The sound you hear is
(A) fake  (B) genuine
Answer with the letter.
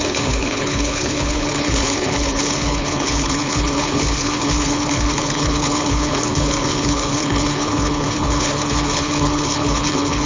A